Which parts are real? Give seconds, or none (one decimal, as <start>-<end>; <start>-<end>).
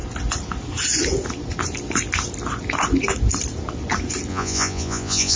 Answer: 0.0-4.3